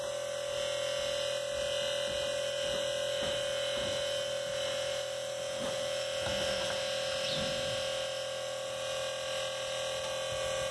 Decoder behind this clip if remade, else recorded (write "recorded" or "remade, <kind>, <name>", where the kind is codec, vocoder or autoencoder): recorded